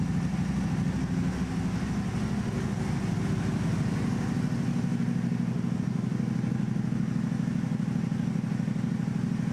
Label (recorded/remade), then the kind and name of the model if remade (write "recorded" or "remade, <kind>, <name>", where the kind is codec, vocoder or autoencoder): recorded